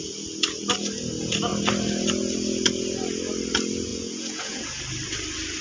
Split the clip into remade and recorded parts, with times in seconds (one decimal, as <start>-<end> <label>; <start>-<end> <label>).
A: 0.0-3.9 recorded; 3.9-4.8 remade; 4.8-5.6 recorded